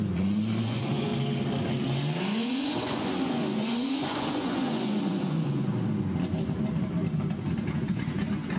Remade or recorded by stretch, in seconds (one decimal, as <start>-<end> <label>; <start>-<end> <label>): 0.0-1.1 remade; 1.1-2.2 recorded; 2.2-5.7 remade; 5.7-7.4 recorded; 7.4-8.6 remade